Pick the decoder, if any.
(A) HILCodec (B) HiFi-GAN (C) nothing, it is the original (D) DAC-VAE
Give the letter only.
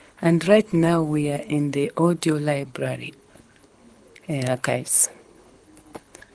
A